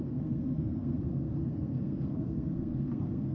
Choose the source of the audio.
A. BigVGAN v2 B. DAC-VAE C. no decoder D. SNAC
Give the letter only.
D